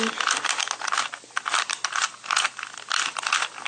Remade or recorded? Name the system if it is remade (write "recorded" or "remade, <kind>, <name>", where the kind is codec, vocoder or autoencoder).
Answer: recorded